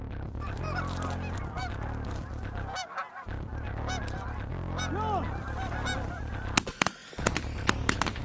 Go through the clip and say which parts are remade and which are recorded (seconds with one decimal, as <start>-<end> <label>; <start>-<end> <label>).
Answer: 0.0-8.2 recorded